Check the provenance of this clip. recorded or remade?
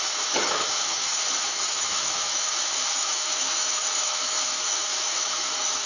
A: remade